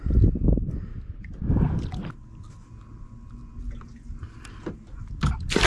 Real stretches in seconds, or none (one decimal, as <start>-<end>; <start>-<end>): 0.0-5.7